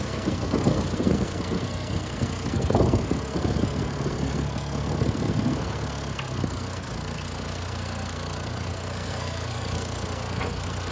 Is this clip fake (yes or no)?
yes